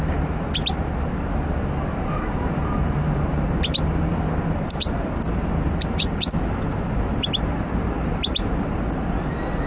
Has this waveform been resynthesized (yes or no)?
no